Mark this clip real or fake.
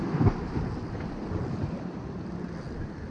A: real